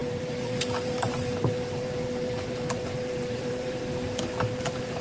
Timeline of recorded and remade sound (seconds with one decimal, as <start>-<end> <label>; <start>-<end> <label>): 0.0-3.8 remade; 3.8-4.6 recorded; 4.6-5.0 remade